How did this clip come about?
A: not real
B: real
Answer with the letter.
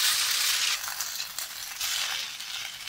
B